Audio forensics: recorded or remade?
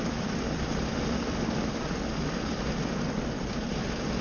remade